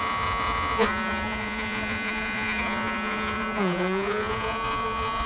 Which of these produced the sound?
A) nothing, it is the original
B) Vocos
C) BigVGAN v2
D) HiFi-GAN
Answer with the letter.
B